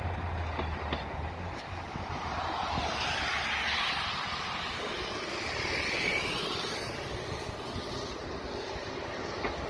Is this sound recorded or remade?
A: recorded